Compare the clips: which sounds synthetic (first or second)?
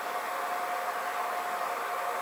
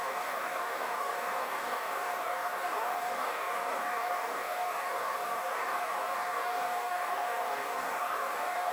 second